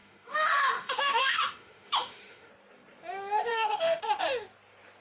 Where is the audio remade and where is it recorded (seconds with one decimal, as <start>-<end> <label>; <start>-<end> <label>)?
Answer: 0.0-2.5 remade; 2.5-3.5 recorded; 3.5-4.0 remade; 4.0-5.0 recorded